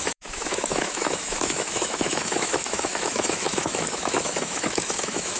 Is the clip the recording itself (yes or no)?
no